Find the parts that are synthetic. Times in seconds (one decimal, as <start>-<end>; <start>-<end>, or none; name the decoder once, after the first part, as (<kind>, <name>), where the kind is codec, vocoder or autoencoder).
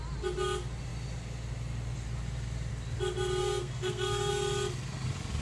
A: 3.4-4.3 (codec, SNAC)